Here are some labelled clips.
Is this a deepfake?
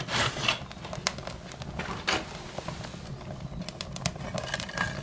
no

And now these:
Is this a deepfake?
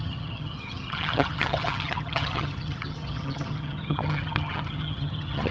yes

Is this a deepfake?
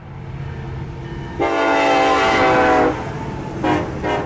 no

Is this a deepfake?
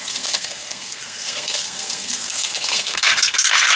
yes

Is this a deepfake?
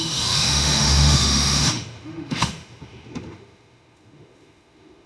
yes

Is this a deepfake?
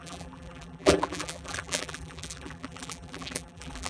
yes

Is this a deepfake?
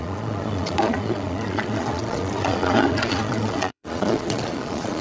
yes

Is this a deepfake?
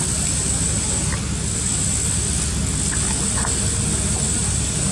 no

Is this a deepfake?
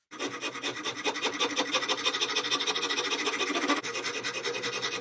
no